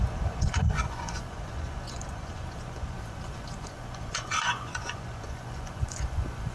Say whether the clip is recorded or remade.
remade